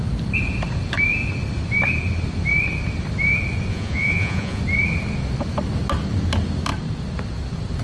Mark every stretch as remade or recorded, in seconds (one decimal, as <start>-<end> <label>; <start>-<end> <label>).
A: 0.0-3.7 recorded; 3.7-4.6 remade; 4.6-7.8 recorded